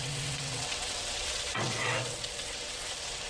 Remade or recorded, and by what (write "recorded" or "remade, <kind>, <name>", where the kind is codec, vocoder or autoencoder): remade, vocoder, WaveNeXt